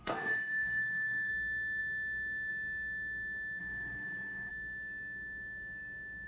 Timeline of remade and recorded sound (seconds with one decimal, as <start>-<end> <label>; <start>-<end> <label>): 0.0-1.3 remade; 1.3-3.6 recorded; 3.6-4.5 remade; 4.5-6.3 recorded